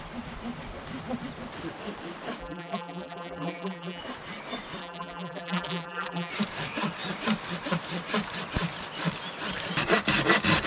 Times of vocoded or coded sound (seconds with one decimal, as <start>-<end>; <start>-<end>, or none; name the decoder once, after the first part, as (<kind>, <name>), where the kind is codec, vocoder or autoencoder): 2.4-4.0 (vocoder, BigVGAN v2); 4.8-6.3